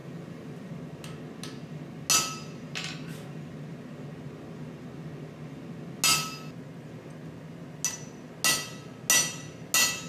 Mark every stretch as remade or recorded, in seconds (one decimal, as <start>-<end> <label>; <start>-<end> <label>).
0.0-0.7 remade; 0.7-10.1 recorded